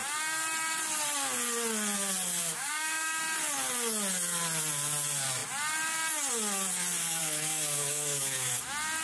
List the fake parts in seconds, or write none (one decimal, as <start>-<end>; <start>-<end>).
2.4-3.2; 7.2-8.5